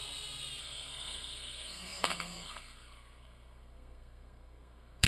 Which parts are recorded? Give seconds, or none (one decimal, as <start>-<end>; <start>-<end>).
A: 0.0-0.6